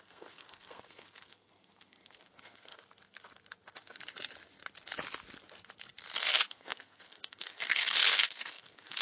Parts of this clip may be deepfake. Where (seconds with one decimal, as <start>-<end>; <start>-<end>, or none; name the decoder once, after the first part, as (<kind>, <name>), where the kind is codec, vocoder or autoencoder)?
0.0-2.7 (codec, SNAC); 6.2-9.0